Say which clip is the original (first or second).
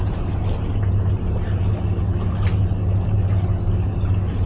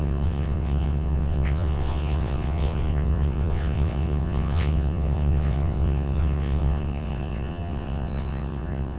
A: first